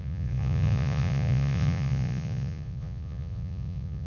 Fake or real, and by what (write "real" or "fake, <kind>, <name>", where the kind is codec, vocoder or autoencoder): fake, vocoder, Vocos